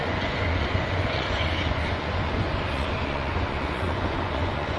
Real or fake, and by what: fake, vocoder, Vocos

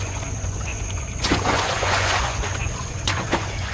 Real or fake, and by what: fake, vocoder, Vocos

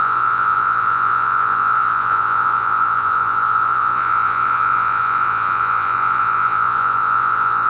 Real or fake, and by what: fake, vocoder, Vocos